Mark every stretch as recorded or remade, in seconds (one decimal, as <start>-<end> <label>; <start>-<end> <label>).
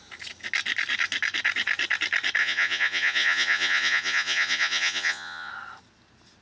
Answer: 0.0-2.4 recorded; 2.4-5.5 remade; 5.5-6.4 recorded